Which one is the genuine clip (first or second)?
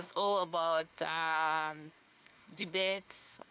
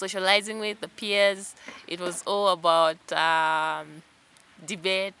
second